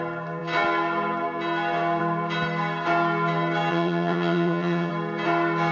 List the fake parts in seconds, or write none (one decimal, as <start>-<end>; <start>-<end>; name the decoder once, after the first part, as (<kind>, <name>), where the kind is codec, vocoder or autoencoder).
3.7-4.9 (vocoder, HiFi-GAN)